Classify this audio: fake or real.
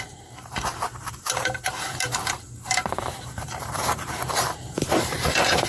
fake